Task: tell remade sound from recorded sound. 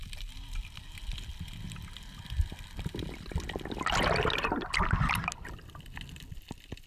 recorded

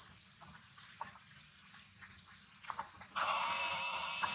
recorded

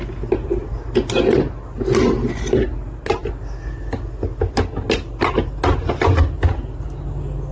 recorded